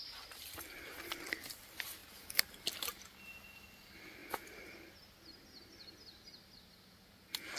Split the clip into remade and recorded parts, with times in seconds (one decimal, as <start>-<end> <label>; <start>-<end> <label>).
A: 0.0-7.6 recorded